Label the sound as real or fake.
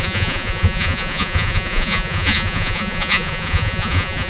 fake